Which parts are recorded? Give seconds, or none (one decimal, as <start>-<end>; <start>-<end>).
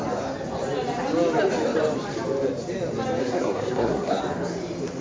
0.0-3.2; 4.2-5.0